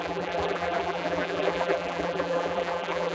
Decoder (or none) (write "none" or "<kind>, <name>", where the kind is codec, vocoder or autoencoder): vocoder, BigVGAN v2